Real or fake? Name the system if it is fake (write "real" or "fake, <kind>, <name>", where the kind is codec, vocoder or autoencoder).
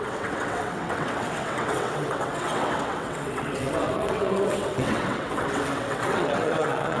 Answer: fake, vocoder, WaveNeXt